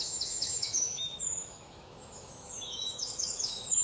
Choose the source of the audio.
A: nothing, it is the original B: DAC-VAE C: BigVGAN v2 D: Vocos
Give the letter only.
B